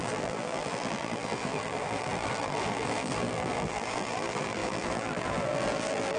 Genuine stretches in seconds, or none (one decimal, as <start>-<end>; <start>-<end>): none